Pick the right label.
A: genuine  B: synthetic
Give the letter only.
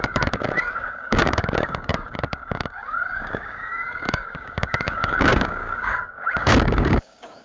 B